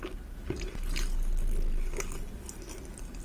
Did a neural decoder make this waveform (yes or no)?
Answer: no